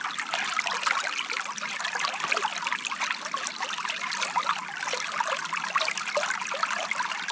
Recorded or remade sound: recorded